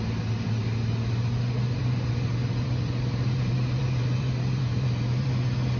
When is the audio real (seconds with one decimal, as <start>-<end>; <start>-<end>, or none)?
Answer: 0.0-1.8; 5.3-5.8